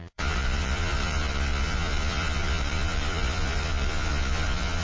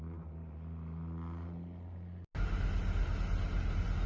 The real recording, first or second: second